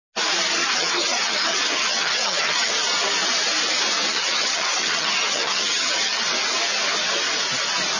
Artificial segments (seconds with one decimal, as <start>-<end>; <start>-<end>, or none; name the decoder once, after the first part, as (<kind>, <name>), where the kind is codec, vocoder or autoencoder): 0.6-2.7 (vocoder, HiFi-GAN); 4.1-6.2